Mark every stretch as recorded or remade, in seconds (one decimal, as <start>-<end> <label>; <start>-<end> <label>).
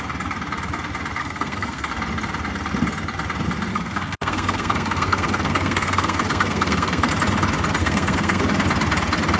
0.0-1.2 recorded; 1.2-1.9 remade; 1.9-3.7 recorded; 3.7-7.1 remade; 7.1-7.8 recorded; 7.8-8.4 remade; 8.4-9.4 recorded